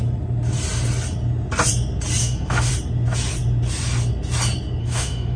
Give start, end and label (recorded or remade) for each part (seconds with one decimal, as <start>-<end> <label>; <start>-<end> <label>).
0.0-2.2 recorded; 2.2-2.7 remade; 2.7-4.8 recorded; 4.8-5.4 remade

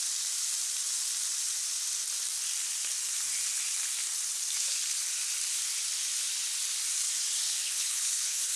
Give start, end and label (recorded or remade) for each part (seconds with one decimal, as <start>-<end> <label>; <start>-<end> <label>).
0.0-7.6 recorded; 7.6-8.6 remade

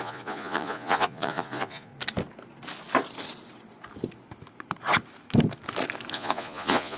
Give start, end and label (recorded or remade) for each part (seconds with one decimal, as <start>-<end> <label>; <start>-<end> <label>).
0.0-1.9 remade; 1.9-6.1 recorded; 6.1-7.0 remade

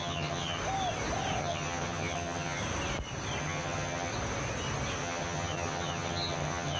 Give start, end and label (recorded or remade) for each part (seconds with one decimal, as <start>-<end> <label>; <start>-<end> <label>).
0.0-0.6 remade; 0.6-1.4 recorded; 1.4-2.6 remade; 2.6-3.4 recorded; 3.4-4.1 remade; 4.1-5.0 recorded; 5.0-6.8 remade

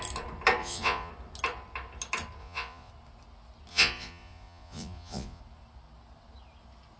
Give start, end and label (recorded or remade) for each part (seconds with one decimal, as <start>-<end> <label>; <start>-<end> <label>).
0.0-0.6 recorded; 0.6-1.1 remade; 1.1-2.4 recorded; 2.4-2.9 remade; 2.9-3.7 recorded; 3.7-5.4 remade; 5.4-7.0 recorded

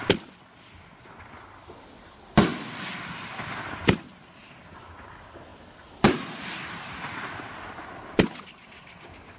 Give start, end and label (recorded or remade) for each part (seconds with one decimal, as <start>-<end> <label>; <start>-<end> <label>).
0.0-9.4 recorded